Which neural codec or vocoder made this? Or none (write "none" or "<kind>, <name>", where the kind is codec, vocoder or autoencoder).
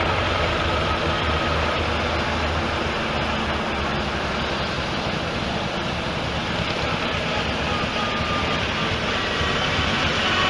none